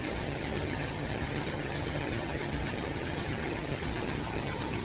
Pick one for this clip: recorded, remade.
remade